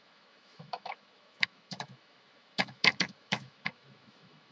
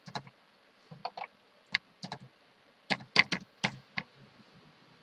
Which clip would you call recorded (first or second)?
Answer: second